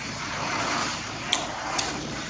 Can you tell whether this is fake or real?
fake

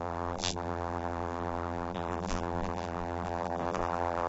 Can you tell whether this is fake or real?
fake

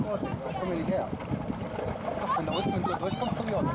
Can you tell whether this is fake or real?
real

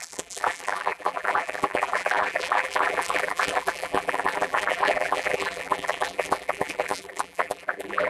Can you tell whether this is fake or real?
fake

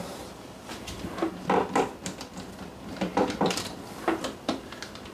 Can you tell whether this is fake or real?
fake